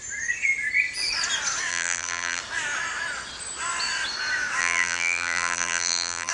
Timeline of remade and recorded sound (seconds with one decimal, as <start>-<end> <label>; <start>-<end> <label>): 0.0-1.7 recorded; 1.7-2.4 remade; 2.4-4.6 recorded; 4.6-6.3 remade